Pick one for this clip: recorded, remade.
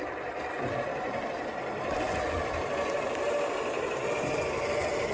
recorded